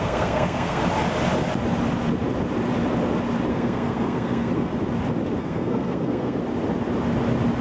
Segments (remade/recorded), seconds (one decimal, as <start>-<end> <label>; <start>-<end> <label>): 0.0-0.8 remade; 0.8-3.5 recorded; 3.5-4.7 remade; 4.7-5.4 recorded; 5.4-6.4 remade; 6.4-7.6 recorded